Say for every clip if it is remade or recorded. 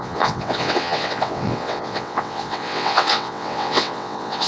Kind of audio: remade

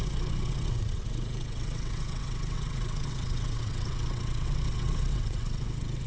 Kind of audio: remade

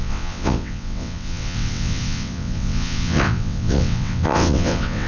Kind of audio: remade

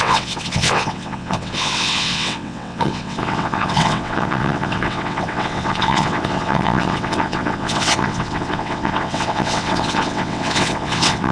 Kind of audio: remade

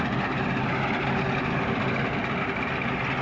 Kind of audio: recorded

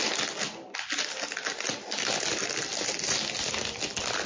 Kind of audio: recorded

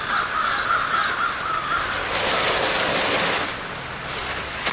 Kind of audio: recorded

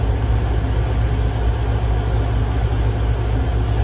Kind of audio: recorded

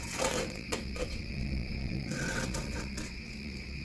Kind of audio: remade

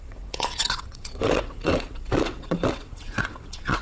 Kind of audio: remade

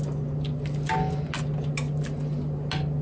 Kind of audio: recorded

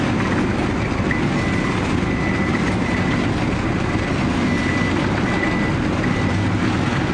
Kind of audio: recorded